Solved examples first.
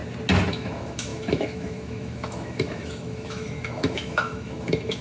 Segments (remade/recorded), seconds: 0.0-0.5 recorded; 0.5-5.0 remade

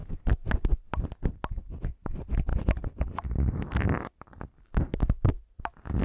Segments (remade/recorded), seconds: 0.0-6.0 recorded

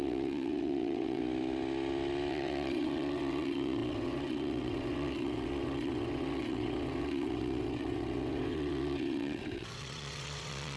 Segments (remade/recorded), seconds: 0.0-1.2 remade; 1.2-2.3 recorded; 2.3-10.8 remade

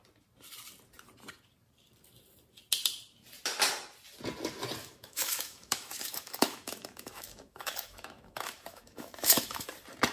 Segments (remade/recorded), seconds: 0.0-4.8 recorded; 4.8-9.7 remade; 9.7-10.1 recorded

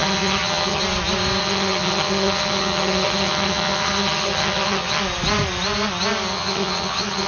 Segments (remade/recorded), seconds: 0.0-0.8 remade; 0.8-1.4 recorded; 1.4-5.0 remade; 5.0-6.3 recorded; 6.3-7.3 remade

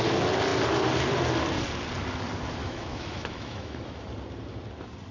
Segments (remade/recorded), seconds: 0.0-2.6 recorded; 2.6-4.1 remade; 4.1-5.1 recorded